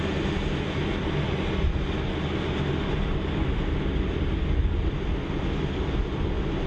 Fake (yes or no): no